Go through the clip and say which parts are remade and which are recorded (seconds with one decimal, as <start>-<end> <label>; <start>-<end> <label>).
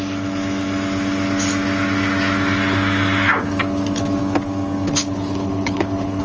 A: 0.0-5.0 recorded; 5.0-6.2 remade